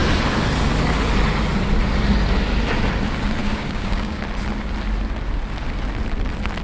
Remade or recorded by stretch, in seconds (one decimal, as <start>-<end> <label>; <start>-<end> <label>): 0.0-3.4 recorded; 3.4-4.2 remade; 4.2-6.6 recorded